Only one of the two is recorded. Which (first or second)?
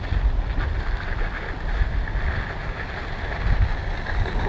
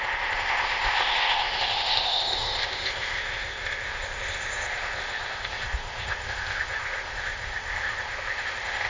first